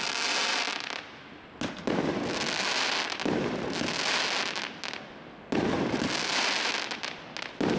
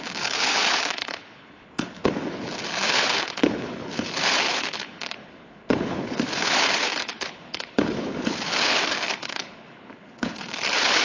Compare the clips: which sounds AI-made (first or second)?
second